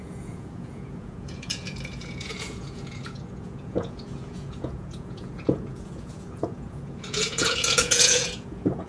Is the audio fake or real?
fake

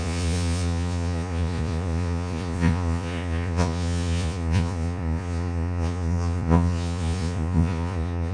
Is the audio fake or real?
fake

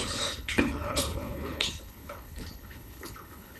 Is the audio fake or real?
fake